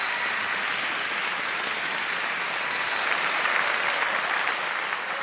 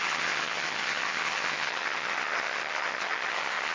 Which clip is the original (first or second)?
first